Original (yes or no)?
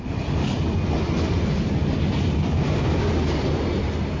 yes